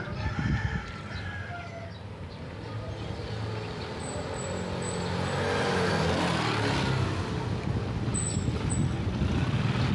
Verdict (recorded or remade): recorded